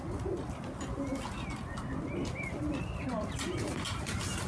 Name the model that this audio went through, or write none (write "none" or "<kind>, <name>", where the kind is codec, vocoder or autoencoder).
none